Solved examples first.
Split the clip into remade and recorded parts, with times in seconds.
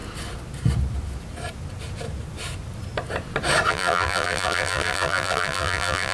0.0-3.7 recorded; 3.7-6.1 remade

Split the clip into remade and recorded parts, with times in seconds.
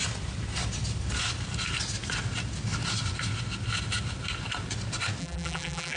0.0-5.2 recorded; 5.2-6.0 remade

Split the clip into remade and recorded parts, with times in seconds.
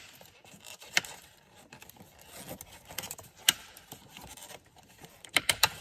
0.0-1.8 remade; 1.8-3.0 recorded; 3.0-5.8 remade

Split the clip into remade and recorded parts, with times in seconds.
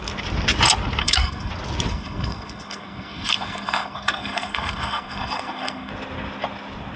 0.0-1.0 recorded; 1.0-1.5 remade; 1.5-1.9 recorded; 1.9-5.9 remade; 5.9-7.0 recorded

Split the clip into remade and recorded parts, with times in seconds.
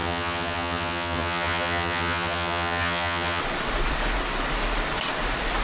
0.0-3.4 remade; 3.4-5.6 recorded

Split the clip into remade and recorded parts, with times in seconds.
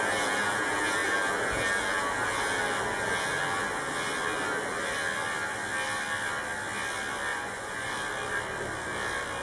0.0-7.3 recorded; 7.3-7.9 remade; 7.9-9.4 recorded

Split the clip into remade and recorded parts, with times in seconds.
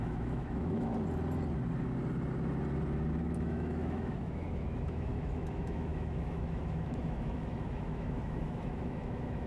0.0-0.9 remade; 0.9-3.1 recorded; 3.1-9.5 remade